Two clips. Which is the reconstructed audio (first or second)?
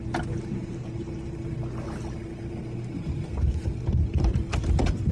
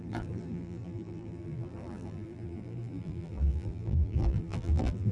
second